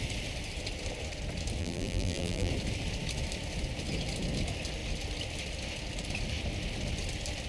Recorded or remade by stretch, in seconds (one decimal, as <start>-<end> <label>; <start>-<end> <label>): 0.0-1.6 recorded; 1.6-2.5 remade; 2.5-7.5 recorded